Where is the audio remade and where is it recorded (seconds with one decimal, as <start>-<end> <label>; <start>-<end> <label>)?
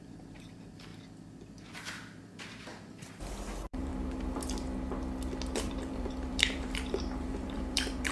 0.0-0.9 remade; 0.9-1.7 recorded; 1.7-3.9 remade; 3.9-5.6 recorded; 5.6-8.1 remade